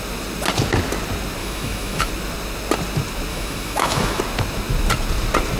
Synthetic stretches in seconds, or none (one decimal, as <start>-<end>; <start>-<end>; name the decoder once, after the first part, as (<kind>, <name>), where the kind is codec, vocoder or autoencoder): 1.4-2.1 (autoencoder, DAC-VAE); 3.3-4.2